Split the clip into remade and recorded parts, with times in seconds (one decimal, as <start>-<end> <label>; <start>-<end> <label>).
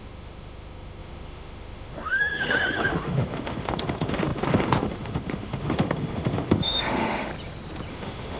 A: 0.0-7.3 remade; 7.3-7.9 recorded; 7.9-8.4 remade